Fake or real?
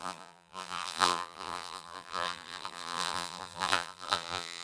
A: fake